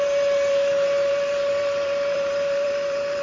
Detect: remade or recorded remade